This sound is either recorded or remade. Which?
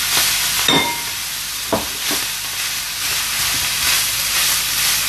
recorded